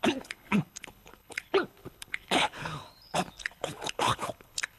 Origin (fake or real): fake